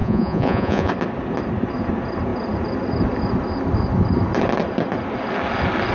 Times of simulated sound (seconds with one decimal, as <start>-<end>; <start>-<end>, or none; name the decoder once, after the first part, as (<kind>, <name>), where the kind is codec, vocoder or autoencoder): 0.0-0.9 (vocoder, Vocos)